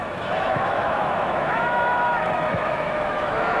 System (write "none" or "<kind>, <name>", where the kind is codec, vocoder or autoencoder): autoencoder, DAC-VAE